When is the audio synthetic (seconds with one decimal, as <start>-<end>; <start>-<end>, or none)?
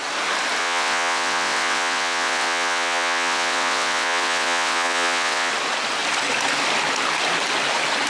0.6-5.5